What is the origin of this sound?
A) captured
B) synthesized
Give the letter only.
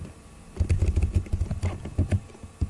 A